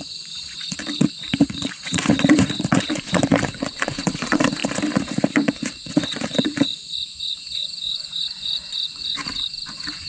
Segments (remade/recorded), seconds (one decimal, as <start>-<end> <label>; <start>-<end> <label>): 0.0-4.6 remade; 4.6-5.3 recorded; 5.3-10.1 remade